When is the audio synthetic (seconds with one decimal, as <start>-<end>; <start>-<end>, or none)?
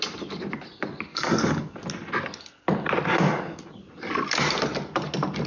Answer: 1.1-1.8; 3.1-3.7